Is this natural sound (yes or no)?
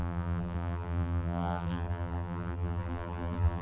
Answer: no